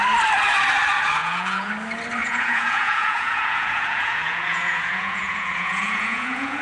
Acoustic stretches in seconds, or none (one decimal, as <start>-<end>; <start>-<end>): 0.0-1.2; 1.7-2.2